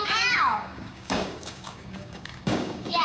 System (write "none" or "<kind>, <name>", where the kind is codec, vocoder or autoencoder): codec, DAC